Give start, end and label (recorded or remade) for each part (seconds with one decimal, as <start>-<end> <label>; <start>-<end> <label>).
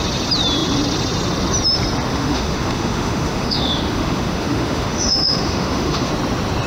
0.0-2.1 recorded; 2.1-6.1 remade; 6.1-6.7 recorded